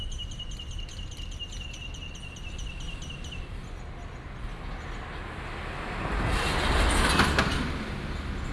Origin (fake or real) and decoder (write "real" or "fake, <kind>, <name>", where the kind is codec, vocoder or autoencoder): real